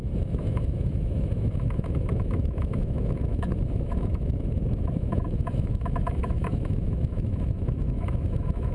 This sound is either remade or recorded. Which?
remade